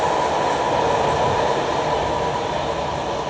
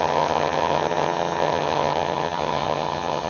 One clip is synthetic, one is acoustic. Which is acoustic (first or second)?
first